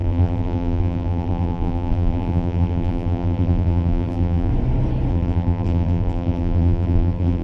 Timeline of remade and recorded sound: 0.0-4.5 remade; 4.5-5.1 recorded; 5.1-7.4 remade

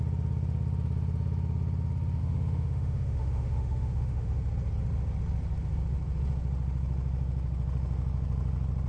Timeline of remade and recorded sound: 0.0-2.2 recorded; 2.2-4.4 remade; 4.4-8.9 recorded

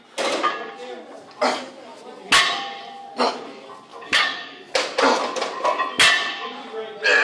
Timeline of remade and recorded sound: 0.0-3.9 recorded; 3.9-4.7 remade; 4.7-7.2 recorded

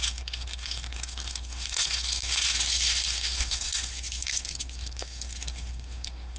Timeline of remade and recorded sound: 0.0-6.4 remade

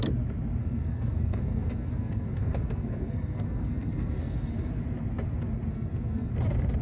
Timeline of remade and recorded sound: 0.0-0.6 recorded; 0.6-4.7 remade; 4.7-5.7 recorded; 5.7-6.3 remade; 6.3-6.8 recorded

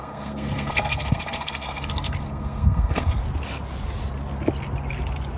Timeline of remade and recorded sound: 0.0-3.2 remade; 3.2-5.4 recorded

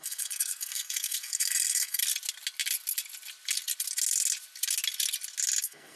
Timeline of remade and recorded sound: 0.0-2.0 remade; 2.0-5.6 recorded; 5.6-6.0 remade

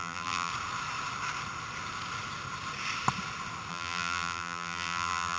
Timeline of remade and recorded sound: 0.0-0.5 remade; 0.5-3.7 recorded; 3.7-5.4 remade